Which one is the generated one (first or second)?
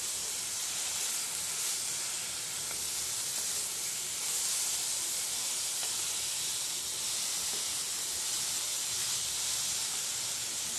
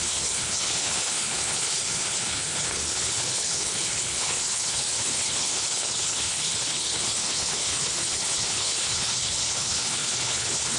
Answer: second